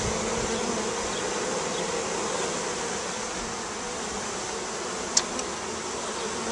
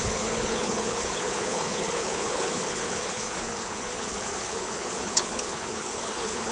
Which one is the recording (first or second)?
first